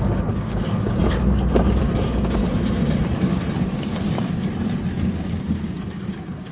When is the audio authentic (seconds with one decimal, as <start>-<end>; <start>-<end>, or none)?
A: 1.0-1.8; 2.4-5.2